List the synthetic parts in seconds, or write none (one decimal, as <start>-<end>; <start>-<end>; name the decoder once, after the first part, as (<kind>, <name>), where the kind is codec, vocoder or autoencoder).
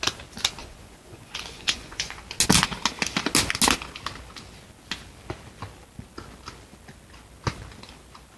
0.6-2.2 (vocoder, Vocos)